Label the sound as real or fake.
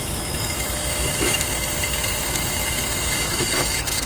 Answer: fake